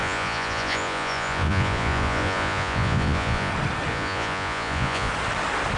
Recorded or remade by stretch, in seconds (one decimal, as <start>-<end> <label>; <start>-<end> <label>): 0.0-3.5 remade; 3.5-3.9 recorded; 3.9-5.1 remade; 5.1-5.8 recorded

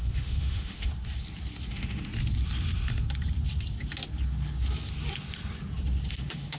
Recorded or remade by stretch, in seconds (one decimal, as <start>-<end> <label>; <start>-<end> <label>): 0.0-0.9 remade; 0.9-1.7 recorded; 1.7-2.1 remade; 2.1-6.1 recorded; 6.1-6.6 remade

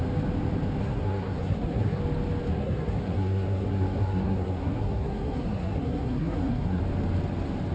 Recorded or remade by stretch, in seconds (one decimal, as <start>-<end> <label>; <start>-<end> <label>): 0.0-0.8 recorded; 0.8-2.0 remade; 2.0-2.5 recorded; 2.5-6.8 remade; 6.8-7.7 recorded

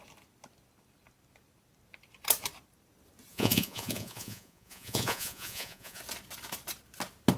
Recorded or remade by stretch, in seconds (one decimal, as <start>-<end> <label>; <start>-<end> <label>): 0.0-3.3 recorded; 3.3-6.0 remade; 6.0-7.4 recorded

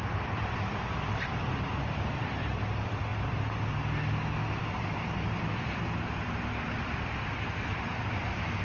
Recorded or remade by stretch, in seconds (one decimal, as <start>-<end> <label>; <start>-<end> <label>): 0.0-3.1 remade; 3.1-4.6 recorded; 4.6-8.6 remade

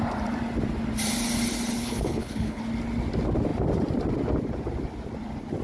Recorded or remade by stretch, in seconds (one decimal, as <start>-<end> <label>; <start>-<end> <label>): 0.0-1.8 recorded; 1.8-2.6 remade; 2.6-5.6 recorded

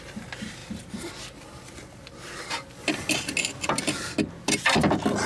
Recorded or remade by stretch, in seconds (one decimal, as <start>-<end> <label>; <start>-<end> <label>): 0.0-5.3 recorded

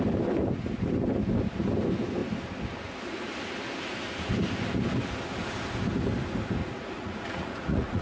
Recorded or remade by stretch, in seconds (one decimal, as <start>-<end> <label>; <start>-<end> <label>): 0.0-6.6 recorded; 6.6-8.0 remade